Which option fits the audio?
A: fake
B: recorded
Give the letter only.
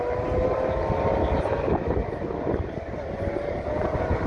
B